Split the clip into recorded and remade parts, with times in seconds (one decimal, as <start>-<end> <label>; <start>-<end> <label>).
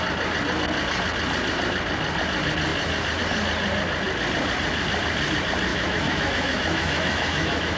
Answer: 0.0-5.7 recorded; 5.7-7.8 remade